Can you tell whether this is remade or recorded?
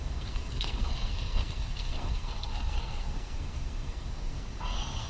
remade